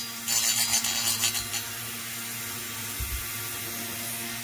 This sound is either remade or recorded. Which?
recorded